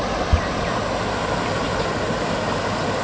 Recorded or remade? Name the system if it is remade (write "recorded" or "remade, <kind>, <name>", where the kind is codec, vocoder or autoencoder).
recorded